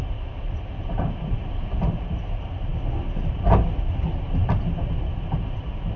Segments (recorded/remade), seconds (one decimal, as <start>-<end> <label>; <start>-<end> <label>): 0.0-2.7 remade; 2.7-3.9 recorded; 3.9-6.0 remade